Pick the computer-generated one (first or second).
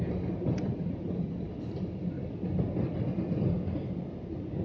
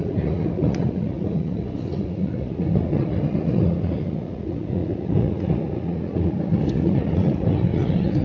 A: second